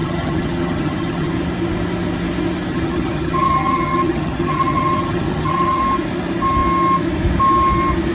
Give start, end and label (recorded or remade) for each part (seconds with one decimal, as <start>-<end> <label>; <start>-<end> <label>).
0.0-1.3 remade; 1.3-2.7 recorded; 2.7-5.8 remade; 5.8-8.1 recorded